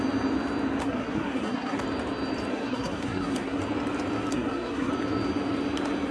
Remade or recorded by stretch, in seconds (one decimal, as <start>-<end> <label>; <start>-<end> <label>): 0.0-0.8 recorded; 0.8-1.8 remade; 1.8-2.5 recorded; 2.5-3.6 remade; 3.6-4.3 recorded; 4.3-4.9 remade; 4.9-6.1 recorded